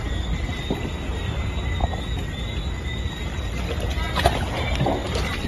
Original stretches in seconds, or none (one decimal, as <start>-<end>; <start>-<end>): 0.0-5.5